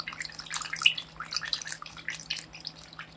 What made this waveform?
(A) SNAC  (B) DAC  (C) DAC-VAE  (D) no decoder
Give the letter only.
D